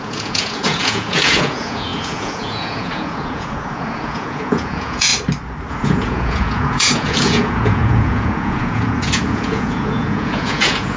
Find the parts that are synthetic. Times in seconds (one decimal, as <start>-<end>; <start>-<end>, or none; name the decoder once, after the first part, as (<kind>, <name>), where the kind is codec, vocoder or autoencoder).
0.0-5.1 (vocoder, Vocos); 5.7-11.0